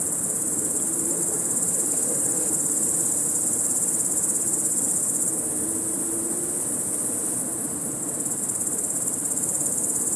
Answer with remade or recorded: remade